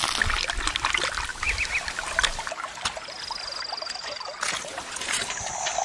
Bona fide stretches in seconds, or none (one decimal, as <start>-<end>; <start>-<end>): 0.0-5.8